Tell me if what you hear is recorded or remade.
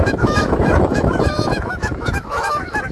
remade